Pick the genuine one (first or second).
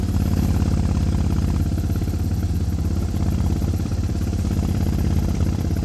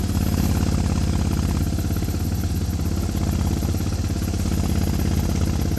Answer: second